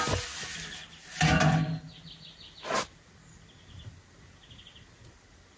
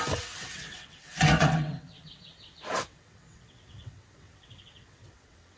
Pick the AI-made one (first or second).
second